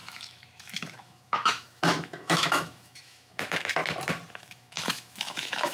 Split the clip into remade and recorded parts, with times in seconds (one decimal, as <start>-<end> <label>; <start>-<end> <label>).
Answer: 0.0-3.8 remade; 3.8-4.3 recorded; 4.3-5.7 remade